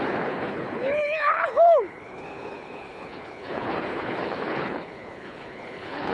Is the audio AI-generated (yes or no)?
yes